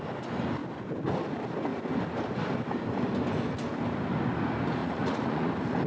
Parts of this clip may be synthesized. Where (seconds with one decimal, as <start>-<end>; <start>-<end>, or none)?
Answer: 4.8-5.5